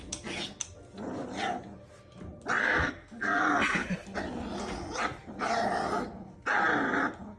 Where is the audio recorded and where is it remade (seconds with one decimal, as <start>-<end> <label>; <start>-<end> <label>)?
0.0-2.6 recorded; 2.6-3.4 remade; 3.4-7.4 recorded